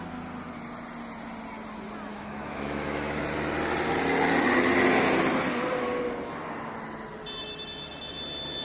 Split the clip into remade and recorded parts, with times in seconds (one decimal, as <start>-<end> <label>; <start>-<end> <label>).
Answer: 0.0-2.1 recorded; 2.1-3.2 remade; 3.2-8.6 recorded